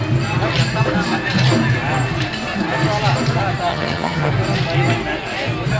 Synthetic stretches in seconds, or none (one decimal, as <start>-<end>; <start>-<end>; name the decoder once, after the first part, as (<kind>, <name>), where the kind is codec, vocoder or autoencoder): 3.7-4.3 (vocoder, HiFi-GAN)